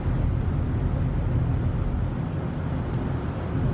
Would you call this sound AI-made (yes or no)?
no